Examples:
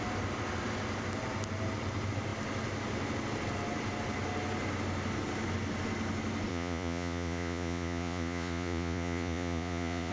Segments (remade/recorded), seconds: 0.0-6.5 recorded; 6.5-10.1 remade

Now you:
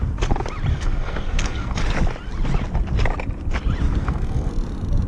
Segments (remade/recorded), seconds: 0.0-0.7 recorded; 0.7-1.8 remade; 1.8-4.0 recorded; 4.0-4.5 remade; 4.5-5.1 recorded

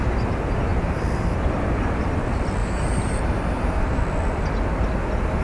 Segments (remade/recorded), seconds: 0.0-0.7 recorded; 0.7-2.0 remade; 2.0-2.6 recorded; 2.6-4.0 remade; 4.0-5.4 recorded